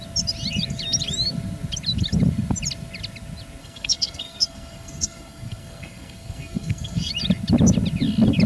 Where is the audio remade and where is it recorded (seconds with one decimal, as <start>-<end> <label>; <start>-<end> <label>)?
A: 0.0-3.6 recorded; 3.6-7.1 remade; 7.1-8.5 recorded

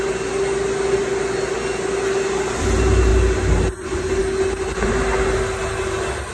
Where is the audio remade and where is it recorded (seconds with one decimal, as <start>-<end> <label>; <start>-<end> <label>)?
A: 0.0-6.3 recorded

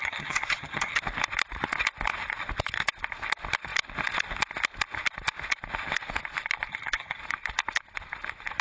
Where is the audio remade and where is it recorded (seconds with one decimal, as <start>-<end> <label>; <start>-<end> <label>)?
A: 0.0-1.0 remade; 1.0-6.7 recorded; 6.7-7.2 remade; 7.2-8.6 recorded

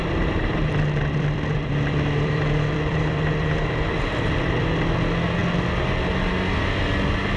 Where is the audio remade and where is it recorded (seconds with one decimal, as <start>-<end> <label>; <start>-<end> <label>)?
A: 0.0-4.4 remade; 4.4-7.4 recorded